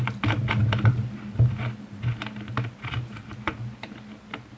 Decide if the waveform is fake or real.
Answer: real